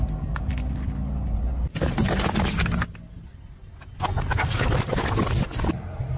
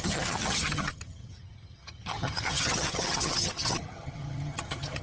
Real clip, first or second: first